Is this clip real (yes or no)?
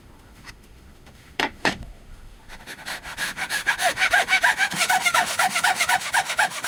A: no